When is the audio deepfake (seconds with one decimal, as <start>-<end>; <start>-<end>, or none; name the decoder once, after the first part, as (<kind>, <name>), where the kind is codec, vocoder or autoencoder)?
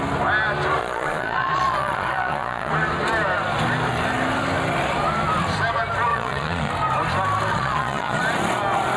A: 0.8-2.7 (vocoder, Vocos); 6.1-6.7; 7.5-8.2